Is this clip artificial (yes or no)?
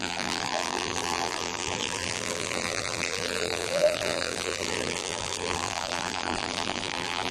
yes